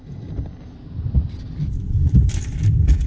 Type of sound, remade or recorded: remade